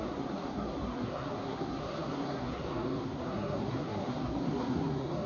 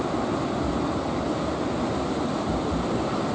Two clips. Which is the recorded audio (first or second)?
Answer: second